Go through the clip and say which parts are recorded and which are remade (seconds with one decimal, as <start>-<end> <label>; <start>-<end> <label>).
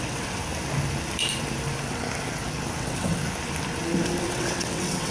0.0-0.4 remade; 0.4-2.8 recorded; 2.8-3.2 remade; 3.2-4.2 recorded; 4.2-5.1 remade